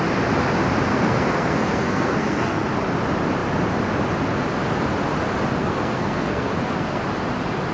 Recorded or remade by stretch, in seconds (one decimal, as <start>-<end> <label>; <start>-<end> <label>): 0.0-0.9 recorded; 0.9-2.7 remade; 2.7-5.6 recorded; 5.6-7.0 remade; 7.0-7.7 recorded